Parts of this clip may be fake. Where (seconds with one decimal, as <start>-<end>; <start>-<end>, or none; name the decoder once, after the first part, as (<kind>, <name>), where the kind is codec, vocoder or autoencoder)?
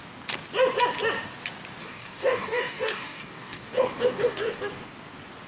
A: 1.8-4.6 (codec, DAC)